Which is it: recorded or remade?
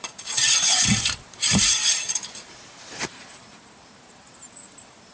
remade